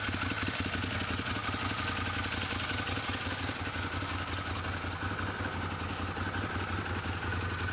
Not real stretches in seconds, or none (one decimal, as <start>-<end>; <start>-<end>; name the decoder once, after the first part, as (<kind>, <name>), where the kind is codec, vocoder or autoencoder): none